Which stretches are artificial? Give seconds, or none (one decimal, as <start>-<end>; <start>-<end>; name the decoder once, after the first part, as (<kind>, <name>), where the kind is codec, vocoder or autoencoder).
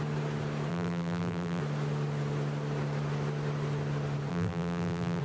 0.7-1.6 (vocoder, BigVGAN v2); 4.3-5.2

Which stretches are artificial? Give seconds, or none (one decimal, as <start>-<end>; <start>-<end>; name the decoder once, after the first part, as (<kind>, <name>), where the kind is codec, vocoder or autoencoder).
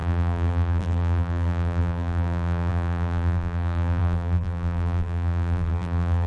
0.0-6.3 (vocoder, BigVGAN v2)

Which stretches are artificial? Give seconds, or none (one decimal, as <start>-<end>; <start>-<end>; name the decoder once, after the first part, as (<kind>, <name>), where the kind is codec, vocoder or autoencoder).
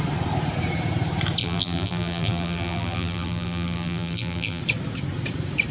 1.4-4.6 (vocoder, BigVGAN v2)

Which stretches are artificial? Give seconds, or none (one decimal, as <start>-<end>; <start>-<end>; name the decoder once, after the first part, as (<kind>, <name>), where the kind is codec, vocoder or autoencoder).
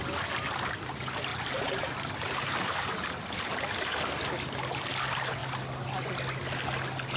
1.3-3.7 (vocoder, BigVGAN v2)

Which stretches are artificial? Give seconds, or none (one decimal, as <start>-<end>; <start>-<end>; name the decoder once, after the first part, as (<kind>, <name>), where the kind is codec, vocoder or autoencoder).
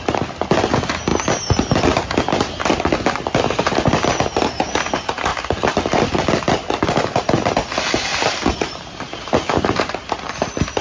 8.1-9.6 (vocoder, BigVGAN v2)